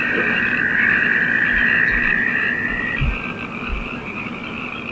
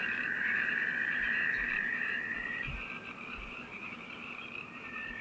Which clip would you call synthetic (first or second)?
second